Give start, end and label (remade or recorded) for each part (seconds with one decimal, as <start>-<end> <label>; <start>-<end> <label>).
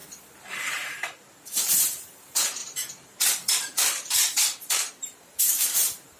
0.0-0.6 recorded; 0.6-6.2 remade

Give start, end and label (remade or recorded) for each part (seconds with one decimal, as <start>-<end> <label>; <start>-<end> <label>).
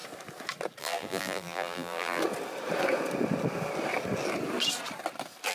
0.0-0.8 recorded; 0.8-2.2 remade; 2.2-5.5 recorded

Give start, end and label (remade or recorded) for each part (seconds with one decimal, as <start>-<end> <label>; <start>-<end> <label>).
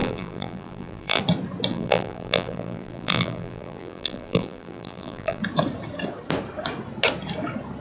0.0-1.2 remade; 1.2-1.7 recorded; 1.7-5.4 remade; 5.4-7.8 recorded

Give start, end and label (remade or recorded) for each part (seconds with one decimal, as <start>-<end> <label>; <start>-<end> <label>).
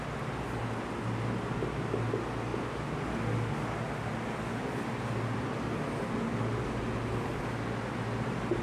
0.0-8.6 recorded